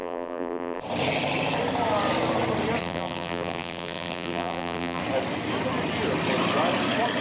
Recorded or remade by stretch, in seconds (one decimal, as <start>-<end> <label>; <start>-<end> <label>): 0.0-0.8 remade; 0.8-2.8 recorded; 2.8-5.0 remade; 5.0-7.2 recorded